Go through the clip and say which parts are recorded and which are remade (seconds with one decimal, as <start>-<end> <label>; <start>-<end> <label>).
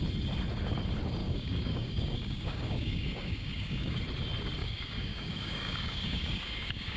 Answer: 0.0-1.2 recorded; 1.2-4.0 remade; 4.0-4.6 recorded; 4.6-7.0 remade